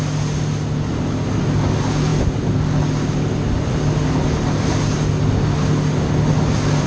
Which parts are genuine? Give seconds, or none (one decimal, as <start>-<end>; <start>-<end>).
0.0-6.9